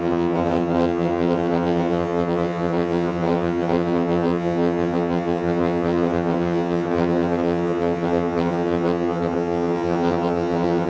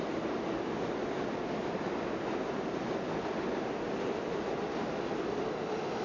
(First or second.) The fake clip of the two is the first